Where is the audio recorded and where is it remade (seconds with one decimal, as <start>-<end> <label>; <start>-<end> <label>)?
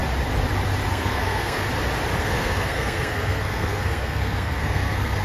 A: 0.0-0.9 recorded; 0.9-1.6 remade; 1.6-2.2 recorded; 2.2-5.2 remade